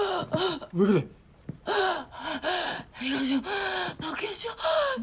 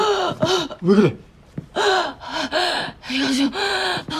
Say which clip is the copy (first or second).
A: second